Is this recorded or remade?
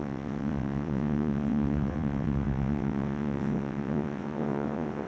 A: remade